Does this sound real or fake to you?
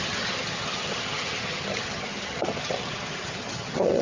fake